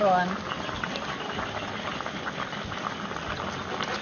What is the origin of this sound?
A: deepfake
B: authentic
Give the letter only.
B